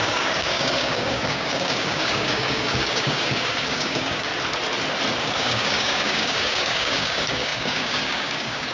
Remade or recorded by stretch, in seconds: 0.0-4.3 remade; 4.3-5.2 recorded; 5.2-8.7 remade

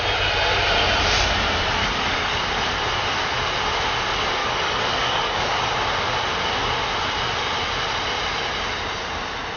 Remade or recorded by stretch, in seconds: 0.0-1.8 recorded; 1.8-2.4 remade; 2.4-4.4 recorded; 4.4-5.7 remade; 5.7-9.6 recorded

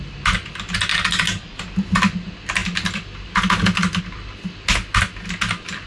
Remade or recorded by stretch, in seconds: 0.0-0.9 recorded; 0.9-1.6 remade; 1.6-5.9 recorded

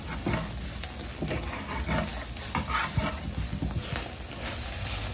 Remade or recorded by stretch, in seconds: 0.0-5.1 recorded